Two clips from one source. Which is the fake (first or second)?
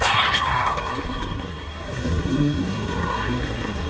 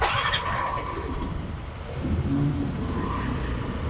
first